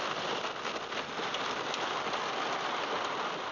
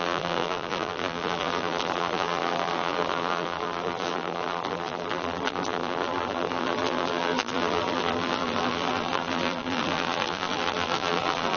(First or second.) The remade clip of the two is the second